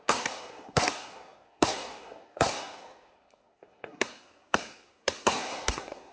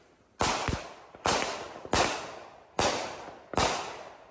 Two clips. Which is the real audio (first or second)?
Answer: second